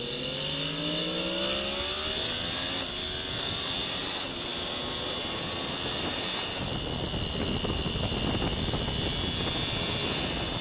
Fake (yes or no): no